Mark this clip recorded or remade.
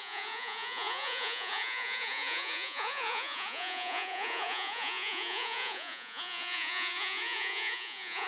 remade